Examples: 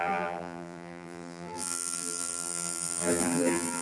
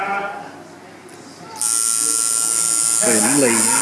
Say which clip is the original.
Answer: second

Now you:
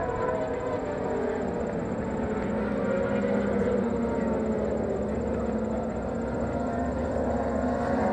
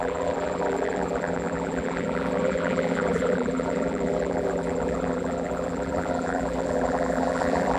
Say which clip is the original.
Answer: first